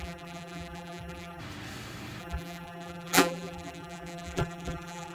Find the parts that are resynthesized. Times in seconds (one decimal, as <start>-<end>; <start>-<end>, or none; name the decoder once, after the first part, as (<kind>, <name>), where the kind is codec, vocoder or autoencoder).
0.0-1.4 (vocoder, BigVGAN v2); 2.2-5.1